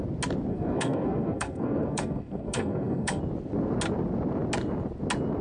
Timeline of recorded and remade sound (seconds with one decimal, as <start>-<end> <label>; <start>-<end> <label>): 0.0-0.5 recorded; 0.5-3.2 remade; 3.2-5.4 recorded